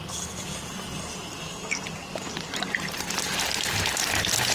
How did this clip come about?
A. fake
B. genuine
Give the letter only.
A